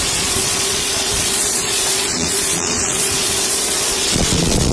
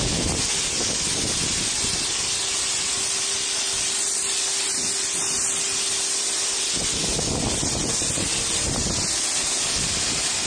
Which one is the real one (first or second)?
second